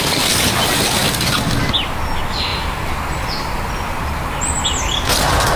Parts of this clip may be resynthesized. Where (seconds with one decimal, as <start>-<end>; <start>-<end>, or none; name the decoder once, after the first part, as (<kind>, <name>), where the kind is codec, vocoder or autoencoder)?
none